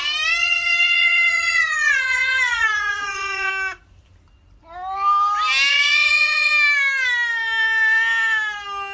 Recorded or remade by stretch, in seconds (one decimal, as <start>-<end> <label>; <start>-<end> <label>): 0.0-0.4 recorded; 0.4-3.5 remade; 3.5-5.7 recorded; 5.7-6.5 remade; 6.5-8.9 recorded